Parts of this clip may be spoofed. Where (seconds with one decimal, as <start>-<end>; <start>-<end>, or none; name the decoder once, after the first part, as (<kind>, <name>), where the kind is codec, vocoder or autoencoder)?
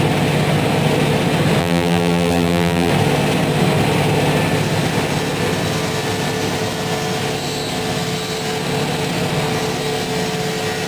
1.6-2.9 (vocoder, BigVGAN v2)